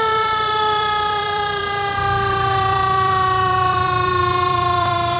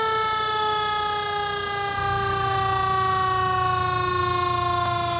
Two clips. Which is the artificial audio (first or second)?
first